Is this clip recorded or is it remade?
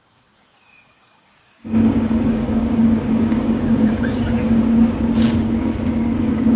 remade